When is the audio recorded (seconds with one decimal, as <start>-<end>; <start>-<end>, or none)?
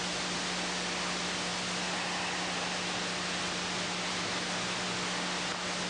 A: 0.0-5.9